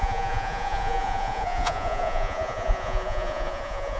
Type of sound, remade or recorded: remade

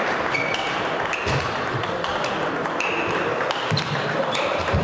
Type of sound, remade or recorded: remade